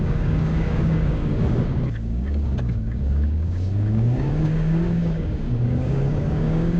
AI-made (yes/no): yes